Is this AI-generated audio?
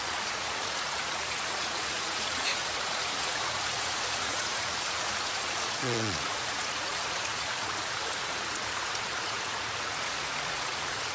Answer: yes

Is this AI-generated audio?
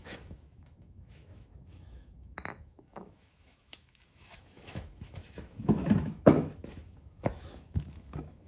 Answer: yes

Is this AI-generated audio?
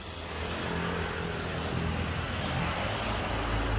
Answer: no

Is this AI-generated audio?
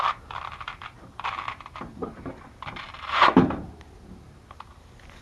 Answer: yes